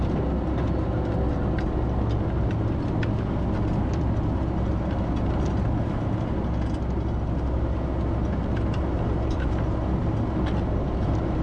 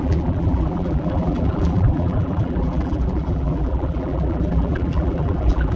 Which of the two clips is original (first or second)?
first